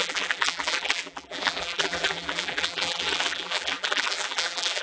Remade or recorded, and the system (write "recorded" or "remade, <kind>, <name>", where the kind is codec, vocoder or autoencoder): remade, vocoder, BigVGAN v2